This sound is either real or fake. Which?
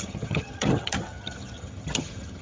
fake